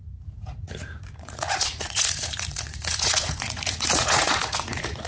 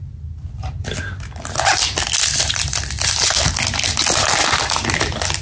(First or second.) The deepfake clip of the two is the first